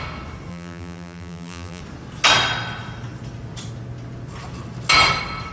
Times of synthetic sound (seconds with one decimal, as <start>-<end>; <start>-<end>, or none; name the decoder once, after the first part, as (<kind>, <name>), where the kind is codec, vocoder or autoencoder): 0.5-1.8 (vocoder, BigVGAN v2)